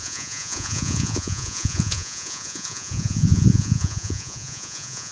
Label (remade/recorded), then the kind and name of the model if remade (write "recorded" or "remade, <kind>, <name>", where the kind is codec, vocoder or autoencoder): remade, vocoder, Vocos